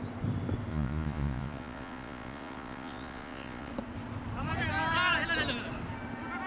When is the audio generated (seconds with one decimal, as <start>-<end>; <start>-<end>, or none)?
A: 0.7-3.7